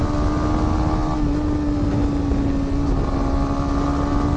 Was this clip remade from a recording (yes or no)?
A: no